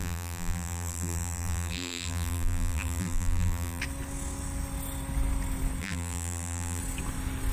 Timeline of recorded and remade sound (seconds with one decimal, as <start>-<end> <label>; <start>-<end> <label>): 0.0-3.8 remade; 3.8-5.8 recorded; 5.8-6.8 remade; 6.8-7.5 recorded